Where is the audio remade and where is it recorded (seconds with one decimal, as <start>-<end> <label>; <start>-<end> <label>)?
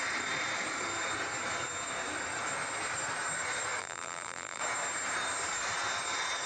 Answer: 0.0-3.8 recorded; 3.8-4.6 remade; 4.6-6.5 recorded